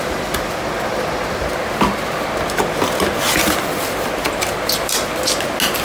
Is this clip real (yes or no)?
yes